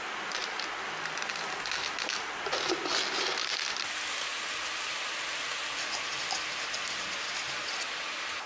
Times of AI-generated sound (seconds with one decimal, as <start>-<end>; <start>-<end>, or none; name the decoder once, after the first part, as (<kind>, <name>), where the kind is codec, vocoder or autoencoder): none